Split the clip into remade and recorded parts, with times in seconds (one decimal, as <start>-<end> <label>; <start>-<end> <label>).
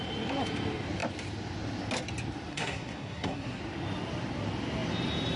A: 0.0-2.5 recorded; 2.5-3.6 remade; 3.6-5.4 recorded